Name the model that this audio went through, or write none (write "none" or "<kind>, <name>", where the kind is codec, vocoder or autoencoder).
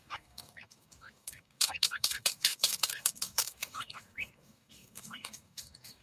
codec, DAC